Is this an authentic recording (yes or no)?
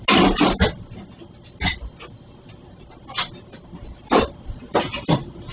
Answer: yes